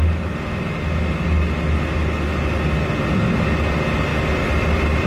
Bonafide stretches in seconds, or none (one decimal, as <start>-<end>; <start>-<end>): 0.0-4.1